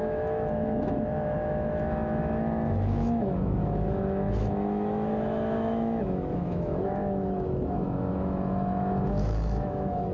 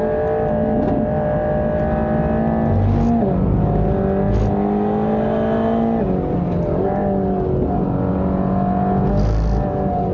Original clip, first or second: second